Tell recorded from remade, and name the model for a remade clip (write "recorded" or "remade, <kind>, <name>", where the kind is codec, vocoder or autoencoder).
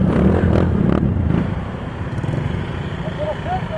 recorded